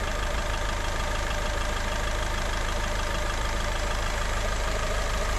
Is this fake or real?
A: fake